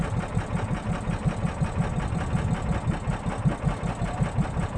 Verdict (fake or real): real